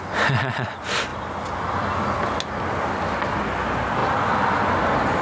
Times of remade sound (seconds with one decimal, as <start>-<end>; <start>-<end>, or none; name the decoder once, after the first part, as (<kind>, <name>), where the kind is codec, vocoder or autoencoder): none